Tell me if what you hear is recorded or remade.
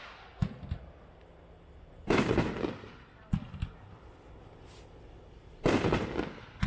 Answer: recorded